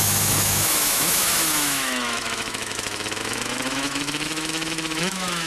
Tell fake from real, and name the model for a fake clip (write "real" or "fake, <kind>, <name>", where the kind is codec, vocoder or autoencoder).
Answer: fake, autoencoder, DAC-VAE